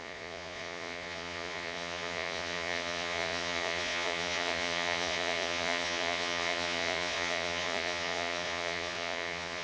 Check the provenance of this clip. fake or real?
fake